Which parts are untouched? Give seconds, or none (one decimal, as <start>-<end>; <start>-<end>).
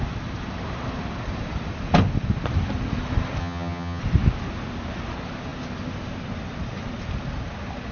0.0-3.4; 4.0-7.9